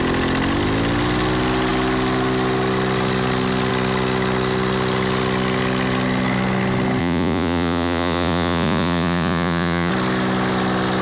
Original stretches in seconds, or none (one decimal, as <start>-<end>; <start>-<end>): 0.0-7.0; 9.9-11.0